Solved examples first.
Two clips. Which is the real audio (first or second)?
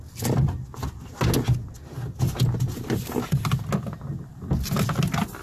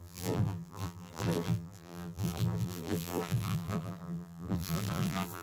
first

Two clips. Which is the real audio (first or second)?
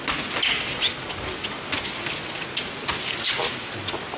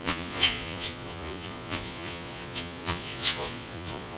first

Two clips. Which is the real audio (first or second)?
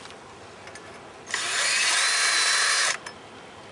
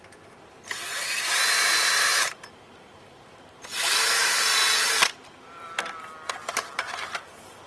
first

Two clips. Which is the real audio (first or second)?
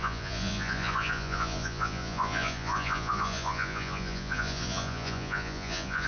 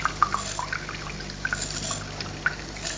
second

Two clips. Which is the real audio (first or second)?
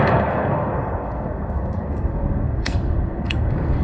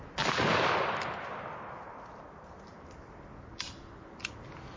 second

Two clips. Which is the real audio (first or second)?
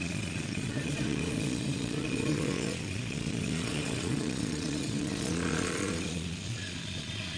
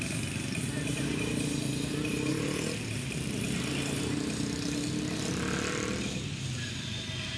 second